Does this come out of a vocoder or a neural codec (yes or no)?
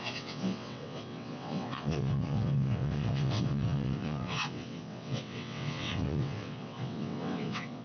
yes